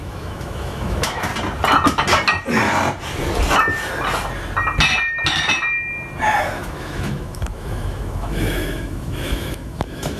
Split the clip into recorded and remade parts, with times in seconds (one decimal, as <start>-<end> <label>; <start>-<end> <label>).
0.0-1.3 remade; 1.3-6.4 recorded; 6.4-10.2 remade